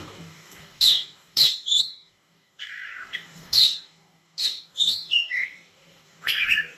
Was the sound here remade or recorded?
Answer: remade